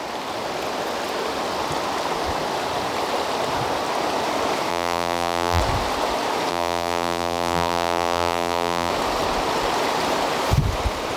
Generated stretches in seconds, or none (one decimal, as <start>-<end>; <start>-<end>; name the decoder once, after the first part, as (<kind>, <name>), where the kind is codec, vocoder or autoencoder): 4.7-5.6 (vocoder, BigVGAN v2); 6.5-8.9